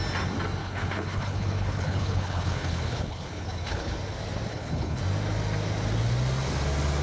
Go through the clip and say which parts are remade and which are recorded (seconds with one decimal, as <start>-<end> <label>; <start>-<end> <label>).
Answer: 0.0-0.6 recorded; 0.6-3.9 remade; 3.9-4.5 recorded; 4.5-5.0 remade; 5.0-7.0 recorded